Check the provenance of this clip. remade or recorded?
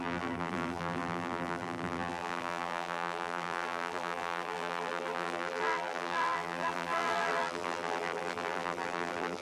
remade